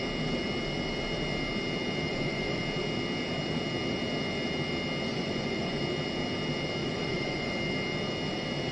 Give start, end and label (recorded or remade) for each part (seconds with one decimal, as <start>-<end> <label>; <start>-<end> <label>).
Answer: 0.0-2.1 recorded; 2.1-2.6 remade; 2.6-5.1 recorded; 5.1-5.8 remade; 5.8-6.8 recorded; 6.8-7.5 remade; 7.5-8.7 recorded